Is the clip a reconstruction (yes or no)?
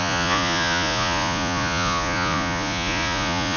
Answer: yes